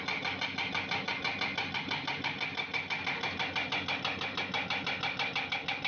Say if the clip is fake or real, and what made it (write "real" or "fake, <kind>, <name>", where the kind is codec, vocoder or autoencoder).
real